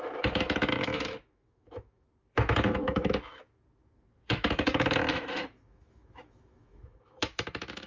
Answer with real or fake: fake